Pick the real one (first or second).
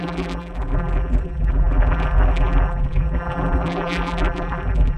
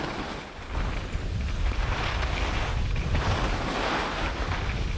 second